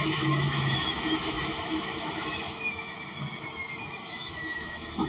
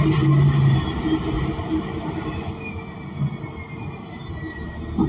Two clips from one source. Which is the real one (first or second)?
second